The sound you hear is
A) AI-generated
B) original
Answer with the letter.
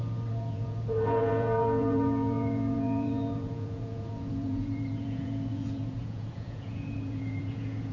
A